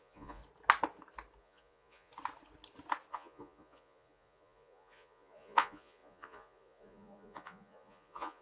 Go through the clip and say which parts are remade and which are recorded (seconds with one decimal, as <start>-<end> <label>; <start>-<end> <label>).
0.0-0.4 remade; 0.4-1.4 recorded; 1.4-2.1 remade; 2.1-3.1 recorded; 3.1-8.4 remade

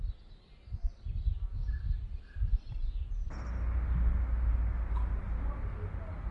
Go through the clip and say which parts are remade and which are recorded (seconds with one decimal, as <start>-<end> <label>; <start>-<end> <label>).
0.0-6.3 recorded

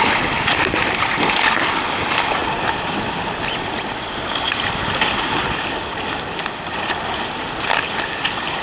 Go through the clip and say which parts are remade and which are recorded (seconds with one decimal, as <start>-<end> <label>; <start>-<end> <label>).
0.0-8.6 recorded

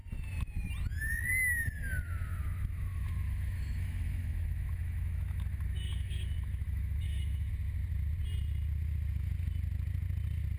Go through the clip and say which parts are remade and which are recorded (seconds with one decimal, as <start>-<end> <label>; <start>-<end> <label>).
0.0-2.3 recorded; 2.3-7.5 remade; 7.5-10.6 recorded

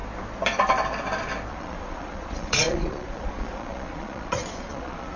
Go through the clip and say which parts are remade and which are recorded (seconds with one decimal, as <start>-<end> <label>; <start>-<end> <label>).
0.0-1.5 recorded; 1.5-5.2 remade

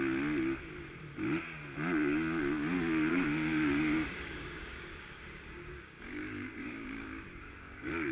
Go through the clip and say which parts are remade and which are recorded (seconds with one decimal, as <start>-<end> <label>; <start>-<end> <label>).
0.0-3.1 recorded; 3.1-8.1 remade